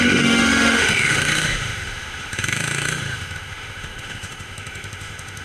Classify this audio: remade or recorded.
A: remade